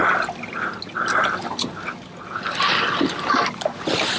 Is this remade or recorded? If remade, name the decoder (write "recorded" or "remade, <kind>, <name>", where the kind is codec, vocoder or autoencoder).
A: recorded